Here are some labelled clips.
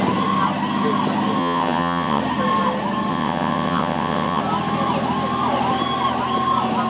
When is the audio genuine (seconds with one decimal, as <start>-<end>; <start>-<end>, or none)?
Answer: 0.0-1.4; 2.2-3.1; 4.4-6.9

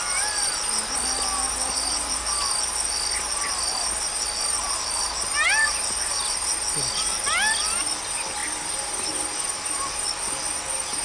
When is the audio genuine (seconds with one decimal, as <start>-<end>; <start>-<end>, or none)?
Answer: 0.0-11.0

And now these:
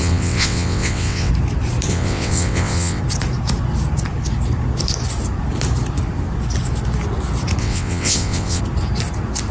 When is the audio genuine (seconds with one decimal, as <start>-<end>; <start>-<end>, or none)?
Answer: 1.3-1.9; 3.0-7.6; 8.6-9.5

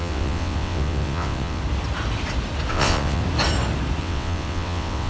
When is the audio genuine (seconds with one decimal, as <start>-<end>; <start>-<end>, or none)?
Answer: 1.6-2.7; 3.2-4.0

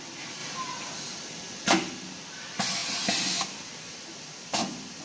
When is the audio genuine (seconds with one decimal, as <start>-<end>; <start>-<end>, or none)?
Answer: 0.0-5.0

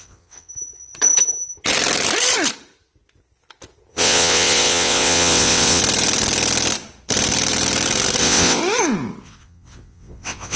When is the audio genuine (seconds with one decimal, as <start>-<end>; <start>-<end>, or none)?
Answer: 0.5-3.9; 5.8-8.2; 8.6-9.2

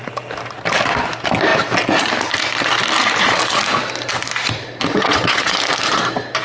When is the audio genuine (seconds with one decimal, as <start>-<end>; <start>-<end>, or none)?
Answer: 0.0-4.9; 5.5-6.4